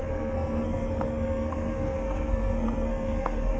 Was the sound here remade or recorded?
remade